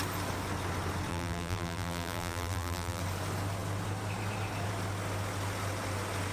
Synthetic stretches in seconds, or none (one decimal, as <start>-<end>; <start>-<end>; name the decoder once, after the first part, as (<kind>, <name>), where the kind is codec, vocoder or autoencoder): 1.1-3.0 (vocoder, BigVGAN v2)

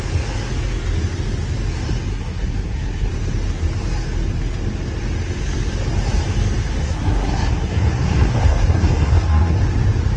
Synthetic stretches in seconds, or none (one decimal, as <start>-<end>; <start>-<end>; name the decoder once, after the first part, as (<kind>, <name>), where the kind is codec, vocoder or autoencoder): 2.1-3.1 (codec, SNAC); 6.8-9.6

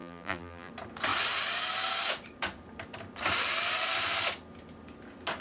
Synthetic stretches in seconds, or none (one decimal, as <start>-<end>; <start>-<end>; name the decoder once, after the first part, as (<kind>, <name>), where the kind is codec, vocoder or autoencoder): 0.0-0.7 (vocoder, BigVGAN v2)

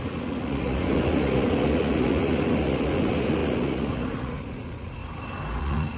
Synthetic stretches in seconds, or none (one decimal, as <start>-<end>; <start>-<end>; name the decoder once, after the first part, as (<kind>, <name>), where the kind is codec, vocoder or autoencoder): 0.0-5.0 (vocoder, Vocos); 5.6-6.0

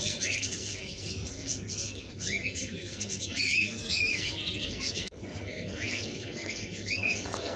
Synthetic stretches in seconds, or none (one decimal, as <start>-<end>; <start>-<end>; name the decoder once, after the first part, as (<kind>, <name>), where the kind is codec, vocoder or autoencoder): 0.0-7.6 (codec, SNAC)

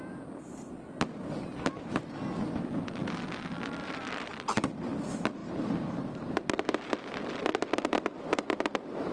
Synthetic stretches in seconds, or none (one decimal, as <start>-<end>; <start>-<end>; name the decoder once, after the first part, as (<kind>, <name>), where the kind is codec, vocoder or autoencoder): none

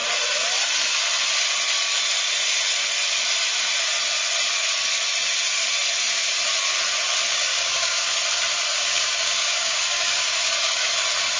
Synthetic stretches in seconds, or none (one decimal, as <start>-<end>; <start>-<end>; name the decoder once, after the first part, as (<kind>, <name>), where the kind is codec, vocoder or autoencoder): 7.3-8.1 (codec, DAC); 8.7-10.9